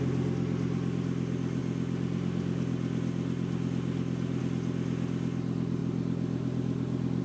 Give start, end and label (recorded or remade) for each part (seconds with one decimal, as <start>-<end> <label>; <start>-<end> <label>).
0.0-7.2 recorded